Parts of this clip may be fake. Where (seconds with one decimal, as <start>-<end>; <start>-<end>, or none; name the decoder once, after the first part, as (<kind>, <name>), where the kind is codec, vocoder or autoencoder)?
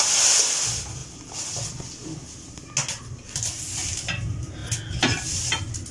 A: 1.0-1.7 (vocoder, BigVGAN v2); 2.9-3.8